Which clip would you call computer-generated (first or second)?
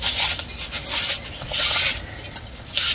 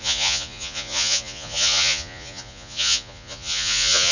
second